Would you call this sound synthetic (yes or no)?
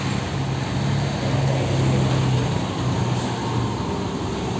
no